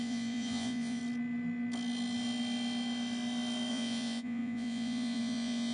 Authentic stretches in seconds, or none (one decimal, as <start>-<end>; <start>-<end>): 1.0-3.7